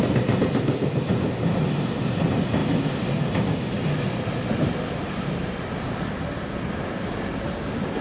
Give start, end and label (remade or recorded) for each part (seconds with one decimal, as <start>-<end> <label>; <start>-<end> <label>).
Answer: 0.0-8.0 recorded